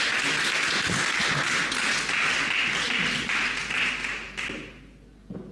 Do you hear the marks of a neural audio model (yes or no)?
no